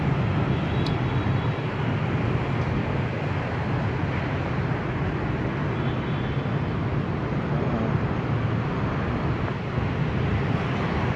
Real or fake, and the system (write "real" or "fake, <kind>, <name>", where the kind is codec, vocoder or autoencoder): real